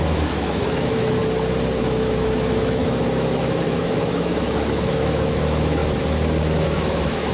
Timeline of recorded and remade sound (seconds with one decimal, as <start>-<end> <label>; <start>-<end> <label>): 0.0-1.2 remade; 1.2-1.8 recorded; 1.8-5.8 remade; 5.8-6.4 recorded; 6.4-7.3 remade